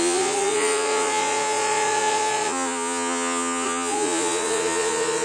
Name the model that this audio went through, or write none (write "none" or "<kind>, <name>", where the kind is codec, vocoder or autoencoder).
vocoder, Vocos